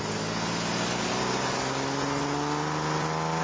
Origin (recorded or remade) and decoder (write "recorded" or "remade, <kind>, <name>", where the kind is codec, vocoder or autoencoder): recorded